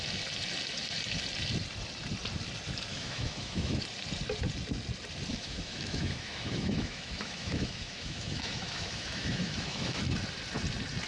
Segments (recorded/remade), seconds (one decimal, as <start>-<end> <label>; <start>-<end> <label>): 0.0-2.9 recorded; 2.9-3.8 remade; 3.8-5.3 recorded; 5.3-10.0 remade; 10.0-11.1 recorded